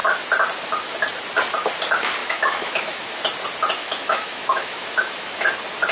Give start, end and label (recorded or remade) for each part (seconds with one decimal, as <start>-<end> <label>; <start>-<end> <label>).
0.0-2.2 recorded; 2.2-3.2 remade; 3.2-3.8 recorded; 3.8-5.4 remade; 5.4-5.9 recorded